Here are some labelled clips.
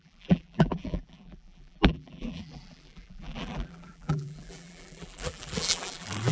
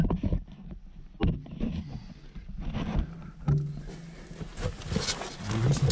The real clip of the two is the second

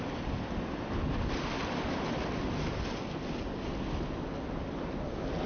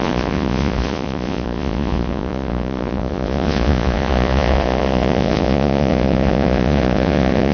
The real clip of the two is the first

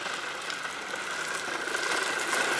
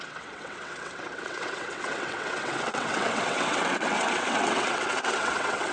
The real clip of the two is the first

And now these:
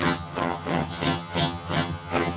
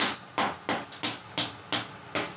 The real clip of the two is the second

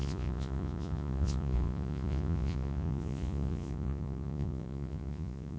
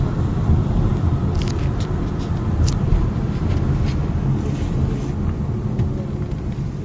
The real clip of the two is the second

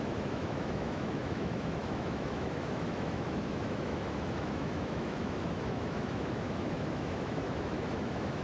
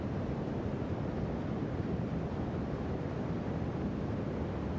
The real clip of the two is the second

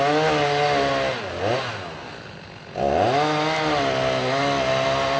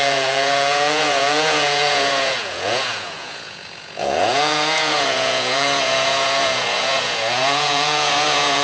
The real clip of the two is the first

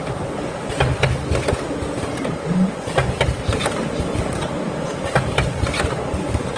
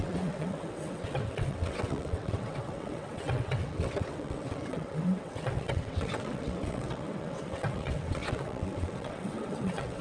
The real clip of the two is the first